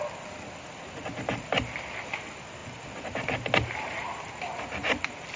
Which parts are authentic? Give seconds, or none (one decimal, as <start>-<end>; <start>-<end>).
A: 0.0-5.4